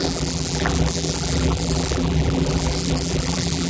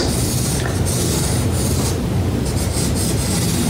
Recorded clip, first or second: second